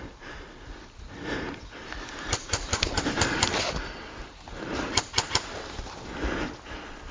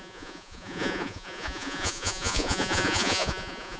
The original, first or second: first